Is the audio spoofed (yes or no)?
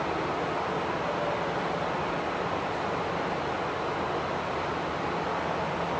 no